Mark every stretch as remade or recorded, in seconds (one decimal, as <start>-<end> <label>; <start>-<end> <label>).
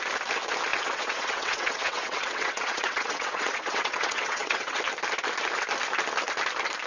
0.0-0.7 recorded; 0.7-4.8 remade; 4.8-6.9 recorded